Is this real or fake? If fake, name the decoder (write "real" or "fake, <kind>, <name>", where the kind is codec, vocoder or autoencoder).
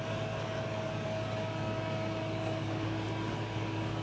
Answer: fake, codec, DAC